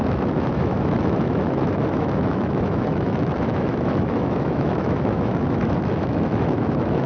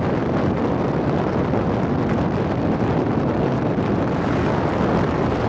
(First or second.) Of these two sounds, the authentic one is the second